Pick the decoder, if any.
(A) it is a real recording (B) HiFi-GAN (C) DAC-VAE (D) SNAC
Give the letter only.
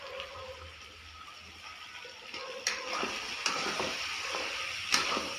A